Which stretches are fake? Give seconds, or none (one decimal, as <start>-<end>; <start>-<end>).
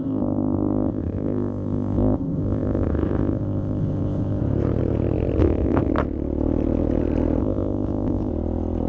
0.0-4.4; 5.4-5.9; 7.4-8.3